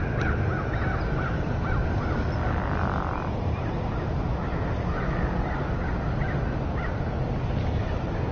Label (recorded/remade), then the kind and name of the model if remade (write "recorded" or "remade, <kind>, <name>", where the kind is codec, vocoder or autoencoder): recorded